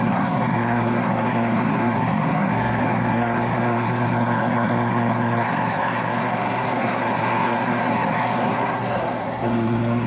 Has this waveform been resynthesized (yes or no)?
yes